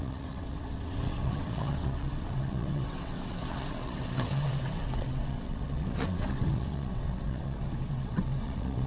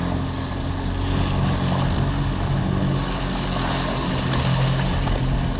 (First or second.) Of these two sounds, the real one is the second